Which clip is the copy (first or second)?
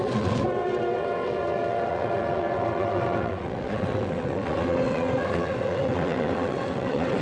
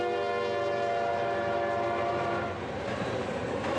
first